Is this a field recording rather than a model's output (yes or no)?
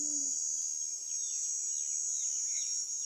yes